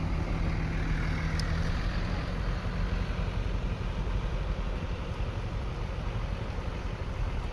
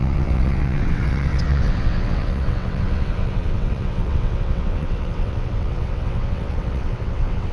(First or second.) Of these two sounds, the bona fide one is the first